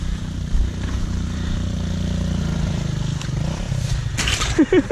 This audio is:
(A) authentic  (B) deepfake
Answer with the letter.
B